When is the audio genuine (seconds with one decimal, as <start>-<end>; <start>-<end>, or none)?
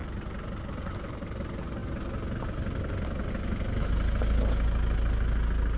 0.0-5.8